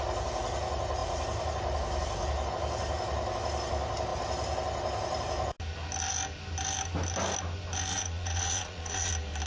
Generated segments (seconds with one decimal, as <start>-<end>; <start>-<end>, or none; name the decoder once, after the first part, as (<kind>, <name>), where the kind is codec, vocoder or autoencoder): 7.9-9.1 (vocoder, Vocos)